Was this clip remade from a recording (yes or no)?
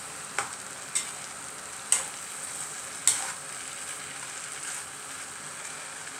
no